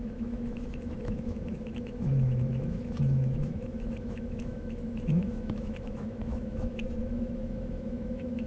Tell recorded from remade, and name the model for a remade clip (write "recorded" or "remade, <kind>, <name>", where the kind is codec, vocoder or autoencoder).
remade, autoencoder, DAC-VAE